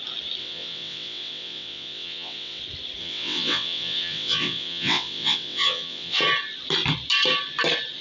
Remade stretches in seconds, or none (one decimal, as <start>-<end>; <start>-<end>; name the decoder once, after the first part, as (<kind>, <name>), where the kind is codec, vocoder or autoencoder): 0.4-2.6 (vocoder, WaveNeXt); 3.0-6.2